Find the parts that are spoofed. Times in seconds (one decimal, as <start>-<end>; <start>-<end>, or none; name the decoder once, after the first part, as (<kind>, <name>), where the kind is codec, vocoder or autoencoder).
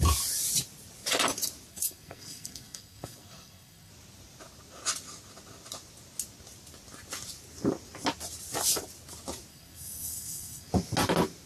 1.7-3.9 (codec, SNAC); 9.5-10.7